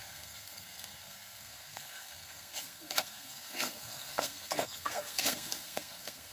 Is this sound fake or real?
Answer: fake